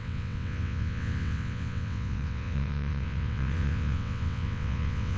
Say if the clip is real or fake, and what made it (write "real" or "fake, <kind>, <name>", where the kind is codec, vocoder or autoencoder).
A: fake, vocoder, WaveNeXt